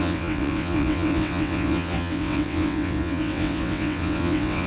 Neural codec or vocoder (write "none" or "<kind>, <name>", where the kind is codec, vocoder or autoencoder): vocoder, WaveNeXt